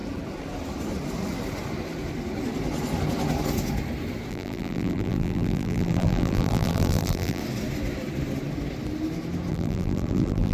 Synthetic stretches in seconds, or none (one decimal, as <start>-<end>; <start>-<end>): 4.3-7.4; 9.5-10.5

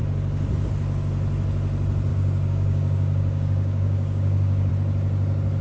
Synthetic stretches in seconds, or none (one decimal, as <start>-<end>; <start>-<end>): 2.1-4.7

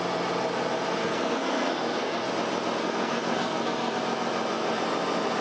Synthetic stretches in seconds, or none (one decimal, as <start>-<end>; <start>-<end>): 1.0-2.3; 2.8-4.0

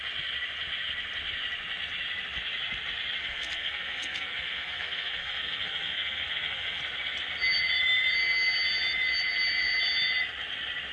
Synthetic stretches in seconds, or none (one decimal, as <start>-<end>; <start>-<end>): 3.2-6.8

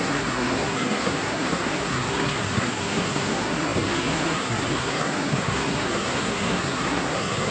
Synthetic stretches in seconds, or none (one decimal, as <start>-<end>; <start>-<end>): 0.0-7.5